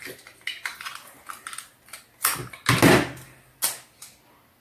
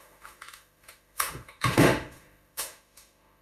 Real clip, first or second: first